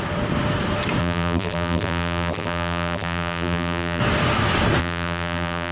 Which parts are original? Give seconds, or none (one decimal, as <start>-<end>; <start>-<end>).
0.0-1.0; 4.0-4.8